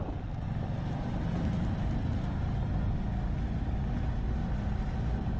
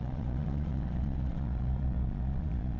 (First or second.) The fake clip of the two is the second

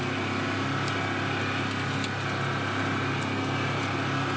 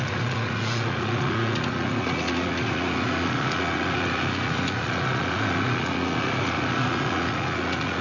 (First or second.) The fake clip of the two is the second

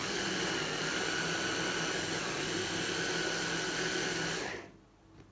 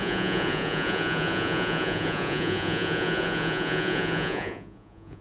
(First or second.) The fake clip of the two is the second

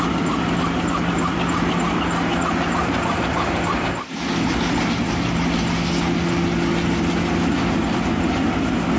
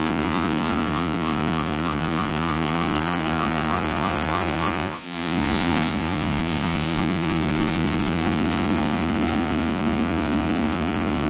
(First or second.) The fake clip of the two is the second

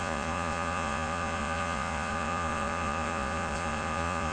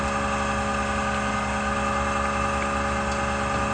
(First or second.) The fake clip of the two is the first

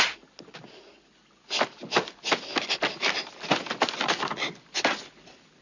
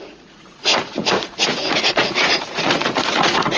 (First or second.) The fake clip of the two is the second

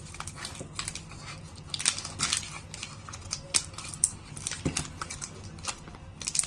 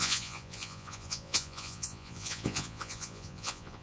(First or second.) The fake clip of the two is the second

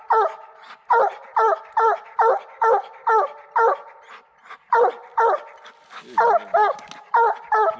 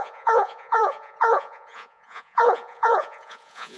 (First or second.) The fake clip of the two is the second